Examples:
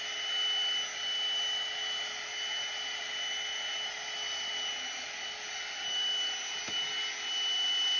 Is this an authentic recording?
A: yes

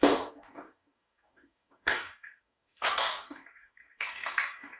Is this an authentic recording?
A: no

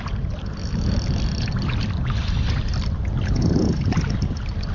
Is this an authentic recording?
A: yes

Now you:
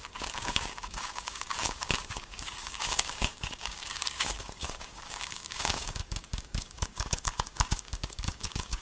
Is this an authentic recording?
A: no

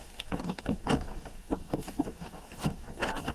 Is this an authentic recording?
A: no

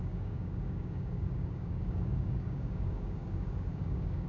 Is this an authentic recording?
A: no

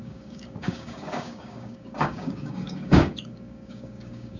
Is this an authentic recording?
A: no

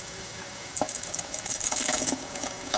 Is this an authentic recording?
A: no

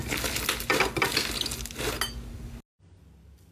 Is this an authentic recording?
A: yes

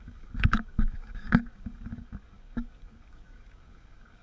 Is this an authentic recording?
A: no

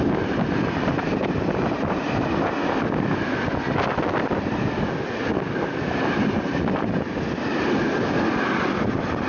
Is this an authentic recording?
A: yes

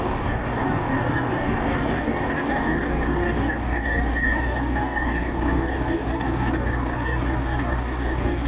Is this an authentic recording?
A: no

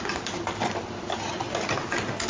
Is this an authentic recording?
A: yes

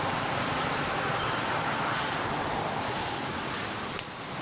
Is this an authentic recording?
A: yes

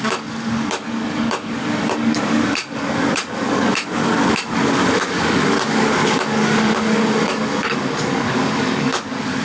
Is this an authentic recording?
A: no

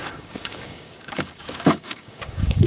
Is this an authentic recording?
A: no